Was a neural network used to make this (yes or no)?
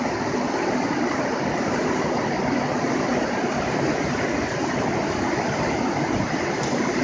no